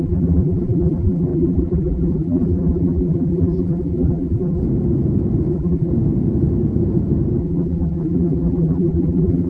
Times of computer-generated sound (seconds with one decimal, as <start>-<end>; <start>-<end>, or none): 0.0-4.6; 5.5-5.9; 7.4-9.5